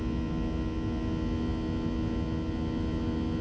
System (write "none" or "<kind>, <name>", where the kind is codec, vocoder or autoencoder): none